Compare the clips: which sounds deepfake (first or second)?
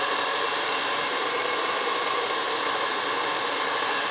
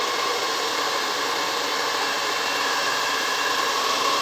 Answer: first